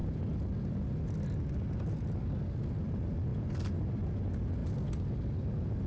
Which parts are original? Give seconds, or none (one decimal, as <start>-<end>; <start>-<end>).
0.0-3.3; 3.8-5.9